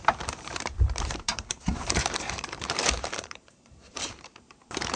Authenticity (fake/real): fake